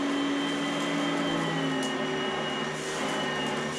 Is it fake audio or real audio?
real